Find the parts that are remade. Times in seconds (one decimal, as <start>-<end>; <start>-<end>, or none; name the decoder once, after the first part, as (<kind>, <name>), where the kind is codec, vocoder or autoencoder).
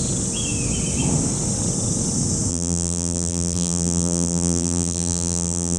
2.5-5.8 (vocoder, BigVGAN v2)